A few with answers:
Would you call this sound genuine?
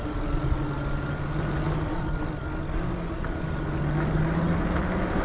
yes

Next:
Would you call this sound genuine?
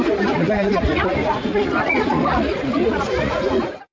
no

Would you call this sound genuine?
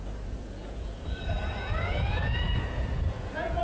no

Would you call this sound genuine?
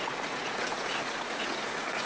no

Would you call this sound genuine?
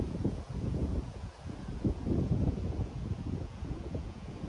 no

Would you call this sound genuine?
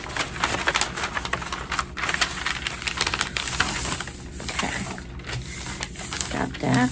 yes